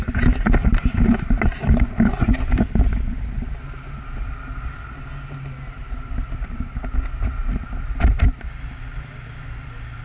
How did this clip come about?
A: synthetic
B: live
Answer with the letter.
B